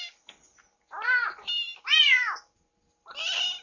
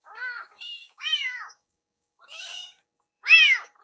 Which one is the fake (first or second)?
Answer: second